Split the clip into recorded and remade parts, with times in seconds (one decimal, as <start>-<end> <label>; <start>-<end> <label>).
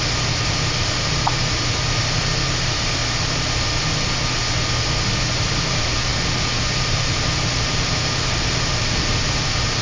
0.0-3.0 remade; 3.0-5.2 recorded; 5.2-6.1 remade; 6.1-6.7 recorded; 6.7-9.8 remade